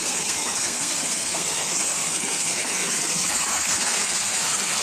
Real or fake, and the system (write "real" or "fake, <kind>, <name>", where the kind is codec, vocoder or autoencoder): fake, codec, SNAC